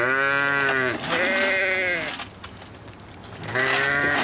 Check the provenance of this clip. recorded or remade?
recorded